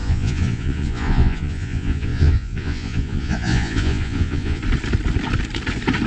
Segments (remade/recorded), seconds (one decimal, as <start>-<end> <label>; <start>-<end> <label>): 0.0-4.6 remade; 4.6-6.1 recorded